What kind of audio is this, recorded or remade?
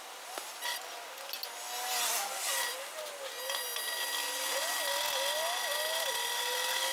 recorded